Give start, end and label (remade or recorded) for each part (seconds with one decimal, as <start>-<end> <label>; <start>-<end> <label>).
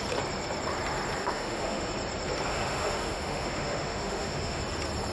0.0-1.2 recorded; 1.2-1.9 remade; 1.9-2.5 recorded; 2.5-4.6 remade; 4.6-5.1 recorded